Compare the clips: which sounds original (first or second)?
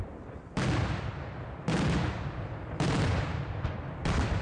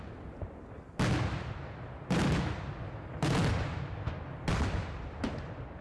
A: second